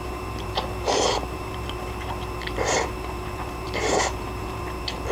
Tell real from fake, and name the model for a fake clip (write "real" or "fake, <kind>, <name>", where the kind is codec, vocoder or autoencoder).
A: fake, vocoder, BigVGAN v2